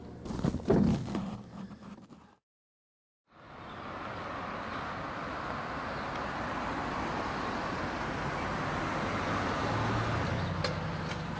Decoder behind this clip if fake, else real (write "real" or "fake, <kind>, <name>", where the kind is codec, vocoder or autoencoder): real